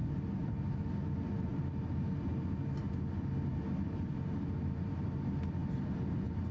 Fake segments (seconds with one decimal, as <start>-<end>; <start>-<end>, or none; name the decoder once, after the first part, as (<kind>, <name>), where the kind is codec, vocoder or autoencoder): none